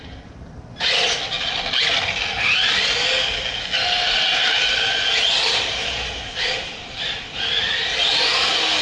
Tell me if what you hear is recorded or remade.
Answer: recorded